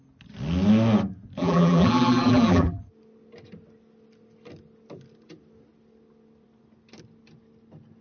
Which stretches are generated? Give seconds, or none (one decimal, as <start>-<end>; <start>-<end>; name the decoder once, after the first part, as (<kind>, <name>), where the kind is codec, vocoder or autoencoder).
1.4-2.8 (vocoder, BigVGAN v2)